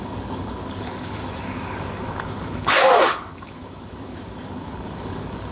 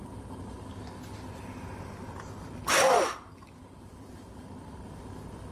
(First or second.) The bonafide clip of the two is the second